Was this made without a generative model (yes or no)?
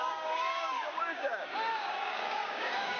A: no